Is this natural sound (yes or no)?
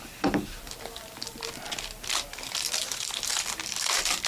no